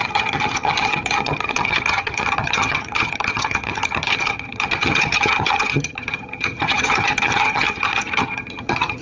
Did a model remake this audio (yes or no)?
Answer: yes